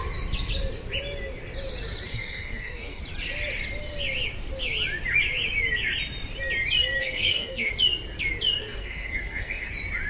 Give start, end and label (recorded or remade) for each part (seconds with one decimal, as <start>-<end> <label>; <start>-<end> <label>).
0.0-2.1 recorded; 2.1-3.0 remade; 3.0-7.0 recorded; 7.0-7.7 remade; 7.7-8.6 recorded; 8.6-9.7 remade; 9.7-10.1 recorded